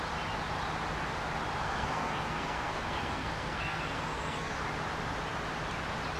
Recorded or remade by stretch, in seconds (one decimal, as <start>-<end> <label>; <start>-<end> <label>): 0.0-1.6 recorded; 1.6-4.5 remade; 4.5-6.2 recorded